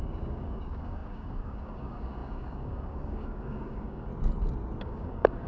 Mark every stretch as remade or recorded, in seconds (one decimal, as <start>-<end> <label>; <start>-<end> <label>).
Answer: 0.0-4.1 remade; 4.1-4.8 recorded; 4.8-5.5 remade